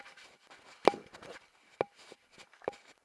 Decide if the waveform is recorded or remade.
recorded